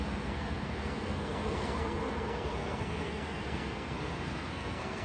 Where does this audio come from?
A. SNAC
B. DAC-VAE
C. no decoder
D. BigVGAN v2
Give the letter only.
A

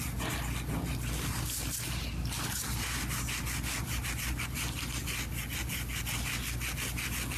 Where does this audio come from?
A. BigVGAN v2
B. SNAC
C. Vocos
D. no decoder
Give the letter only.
D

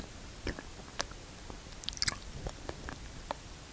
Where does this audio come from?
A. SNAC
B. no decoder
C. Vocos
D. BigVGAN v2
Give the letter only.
B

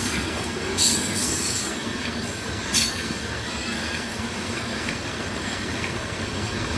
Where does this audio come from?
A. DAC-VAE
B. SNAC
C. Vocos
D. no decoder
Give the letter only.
B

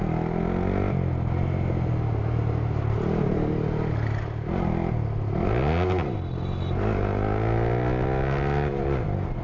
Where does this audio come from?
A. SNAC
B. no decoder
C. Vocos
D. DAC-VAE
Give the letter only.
B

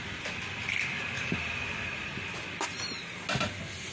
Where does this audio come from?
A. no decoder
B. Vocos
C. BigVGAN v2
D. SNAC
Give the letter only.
A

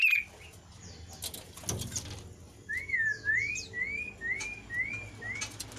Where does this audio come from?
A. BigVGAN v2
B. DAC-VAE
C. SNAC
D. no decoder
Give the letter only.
D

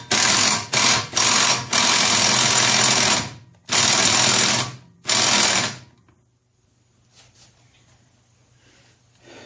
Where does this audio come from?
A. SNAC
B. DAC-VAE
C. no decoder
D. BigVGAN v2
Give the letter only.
C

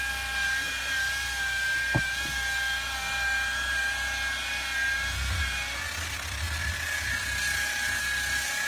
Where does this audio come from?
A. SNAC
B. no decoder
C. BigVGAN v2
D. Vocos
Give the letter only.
B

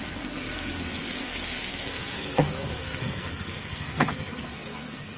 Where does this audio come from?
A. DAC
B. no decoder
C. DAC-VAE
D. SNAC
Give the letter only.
D